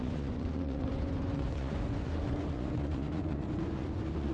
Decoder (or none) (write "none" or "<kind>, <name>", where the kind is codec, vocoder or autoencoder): vocoder, Vocos